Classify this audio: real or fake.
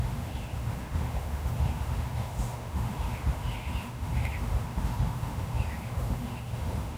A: fake